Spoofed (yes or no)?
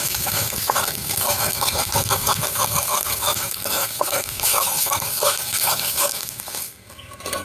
yes